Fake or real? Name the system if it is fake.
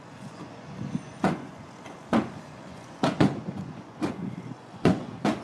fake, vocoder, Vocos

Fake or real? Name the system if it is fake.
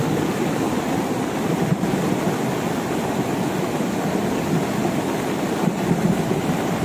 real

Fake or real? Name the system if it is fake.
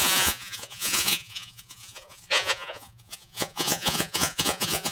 fake, vocoder, Vocos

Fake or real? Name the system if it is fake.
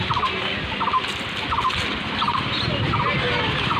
real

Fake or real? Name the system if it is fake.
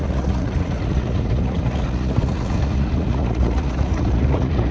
fake, vocoder, Vocos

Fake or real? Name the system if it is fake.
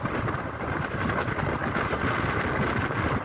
real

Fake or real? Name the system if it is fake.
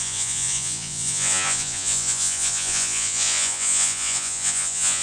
fake, vocoder, Vocos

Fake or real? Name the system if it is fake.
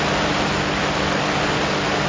real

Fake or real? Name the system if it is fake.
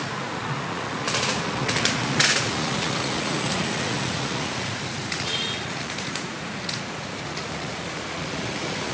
fake, vocoder, Vocos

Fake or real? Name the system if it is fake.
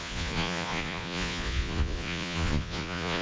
fake, vocoder, Vocos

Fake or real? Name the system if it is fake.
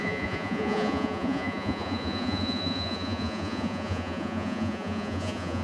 fake, vocoder, Vocos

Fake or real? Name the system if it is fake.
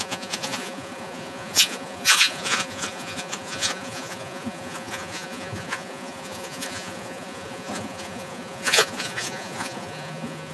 fake, vocoder, Vocos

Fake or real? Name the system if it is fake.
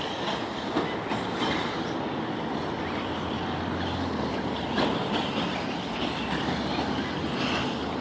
real